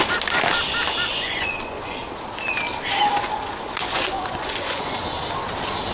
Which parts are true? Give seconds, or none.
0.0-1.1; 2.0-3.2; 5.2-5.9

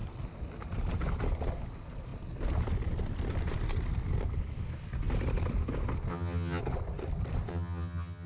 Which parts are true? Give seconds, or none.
0.0-6.1; 6.6-7.5

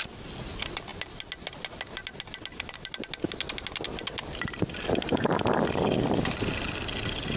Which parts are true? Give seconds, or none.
0.0-7.4

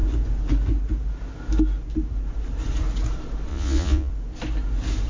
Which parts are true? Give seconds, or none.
0.0-3.5; 4.1-5.1

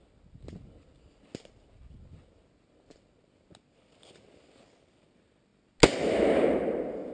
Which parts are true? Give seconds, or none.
0.0-7.1

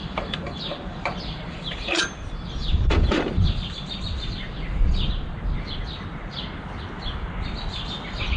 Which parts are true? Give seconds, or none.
3.2-8.4

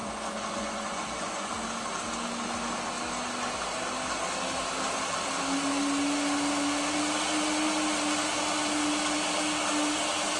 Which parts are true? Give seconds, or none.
1.5-10.4